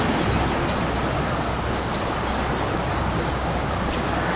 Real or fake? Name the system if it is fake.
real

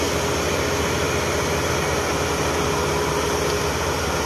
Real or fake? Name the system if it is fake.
real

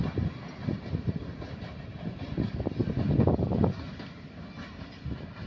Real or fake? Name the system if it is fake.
real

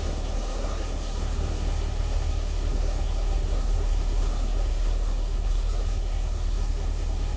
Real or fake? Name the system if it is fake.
fake, codec, SNAC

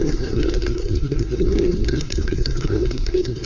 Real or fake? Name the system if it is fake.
fake, codec, SNAC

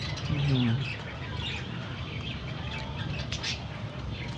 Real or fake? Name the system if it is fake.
real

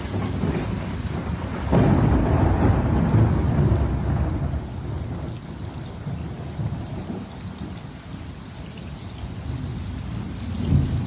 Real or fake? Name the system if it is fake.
real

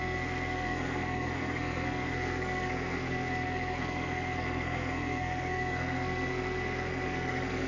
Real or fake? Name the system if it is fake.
fake, codec, SNAC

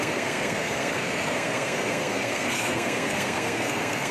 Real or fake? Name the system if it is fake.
fake, codec, SNAC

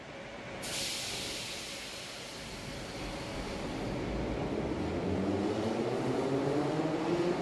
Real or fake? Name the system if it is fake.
real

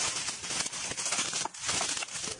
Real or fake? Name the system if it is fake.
real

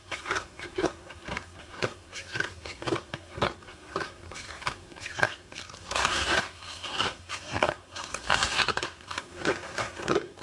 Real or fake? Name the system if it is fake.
fake, codec, SNAC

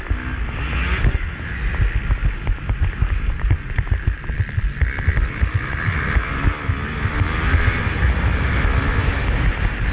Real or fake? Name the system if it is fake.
real